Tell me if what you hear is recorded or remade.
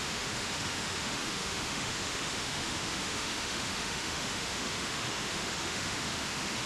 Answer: remade